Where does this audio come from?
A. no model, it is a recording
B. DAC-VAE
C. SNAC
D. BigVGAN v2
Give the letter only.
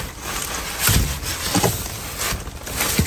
A